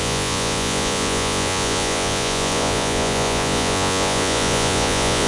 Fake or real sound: fake